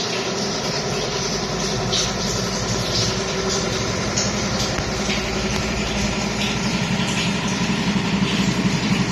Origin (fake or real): fake